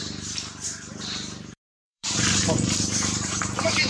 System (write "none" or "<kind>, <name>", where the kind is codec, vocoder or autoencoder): vocoder, BigVGAN v2